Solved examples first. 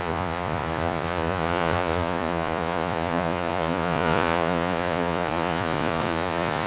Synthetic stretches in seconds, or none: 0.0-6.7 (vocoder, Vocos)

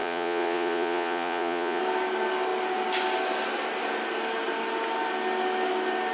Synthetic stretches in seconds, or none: 0.0-1.8 (vocoder, Vocos)